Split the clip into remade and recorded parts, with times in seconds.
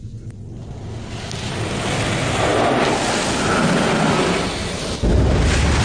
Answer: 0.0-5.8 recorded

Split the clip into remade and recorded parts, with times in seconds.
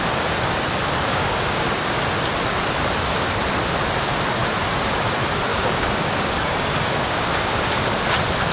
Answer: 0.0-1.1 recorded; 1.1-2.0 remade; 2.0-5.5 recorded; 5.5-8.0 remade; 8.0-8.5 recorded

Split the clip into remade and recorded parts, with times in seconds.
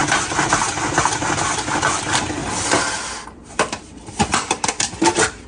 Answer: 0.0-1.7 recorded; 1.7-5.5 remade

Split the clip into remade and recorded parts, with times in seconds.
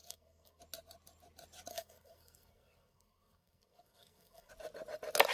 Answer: 0.0-0.6 remade; 0.6-1.7 recorded; 1.7-4.5 remade; 4.5-5.3 recorded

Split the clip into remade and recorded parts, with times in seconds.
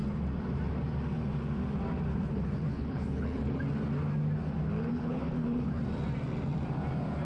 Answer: 0.0-2.1 recorded; 2.1-3.6 remade; 3.6-4.9 recorded; 4.9-5.8 remade; 5.8-7.2 recorded